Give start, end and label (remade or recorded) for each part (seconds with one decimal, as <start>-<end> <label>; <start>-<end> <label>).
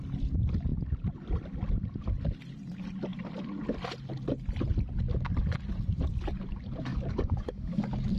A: 0.0-6.9 recorded; 6.9-8.2 remade